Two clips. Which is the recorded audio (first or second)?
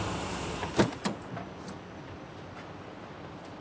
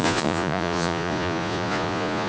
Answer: first